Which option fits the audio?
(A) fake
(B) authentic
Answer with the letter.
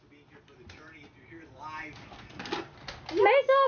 B